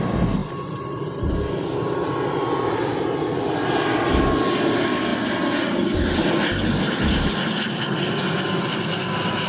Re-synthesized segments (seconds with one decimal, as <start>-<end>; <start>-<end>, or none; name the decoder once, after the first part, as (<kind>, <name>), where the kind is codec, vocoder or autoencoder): none